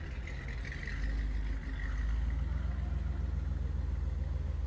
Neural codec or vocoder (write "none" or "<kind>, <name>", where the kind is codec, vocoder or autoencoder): none